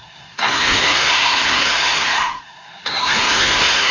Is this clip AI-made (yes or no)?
yes